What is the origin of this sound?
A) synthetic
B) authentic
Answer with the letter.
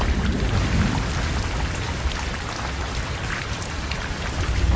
B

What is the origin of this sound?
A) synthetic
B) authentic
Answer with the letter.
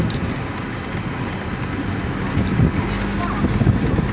B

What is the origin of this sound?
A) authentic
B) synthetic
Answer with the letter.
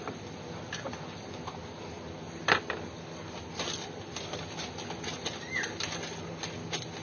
A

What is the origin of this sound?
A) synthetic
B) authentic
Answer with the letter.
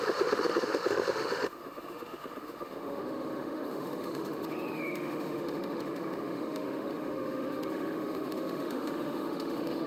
A